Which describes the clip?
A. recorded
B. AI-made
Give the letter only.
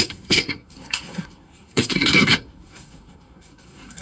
B